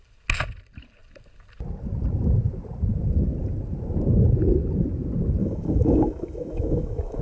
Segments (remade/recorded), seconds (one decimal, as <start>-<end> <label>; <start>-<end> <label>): 0.0-5.4 recorded; 5.4-7.2 remade